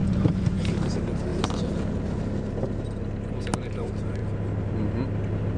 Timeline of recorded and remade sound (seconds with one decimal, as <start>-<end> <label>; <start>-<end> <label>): 0.0-0.6 remade; 0.6-5.6 recorded